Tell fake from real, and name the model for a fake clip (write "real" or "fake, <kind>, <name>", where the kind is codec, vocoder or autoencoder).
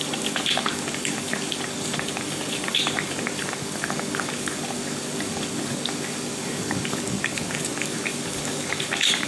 fake, codec, DAC